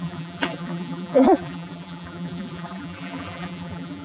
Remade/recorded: remade